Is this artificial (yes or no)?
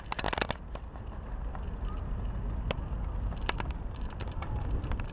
no